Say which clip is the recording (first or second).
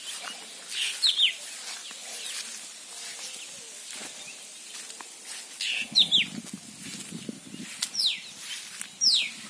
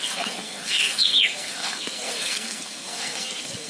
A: first